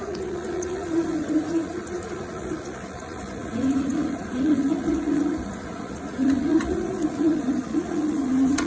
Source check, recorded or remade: remade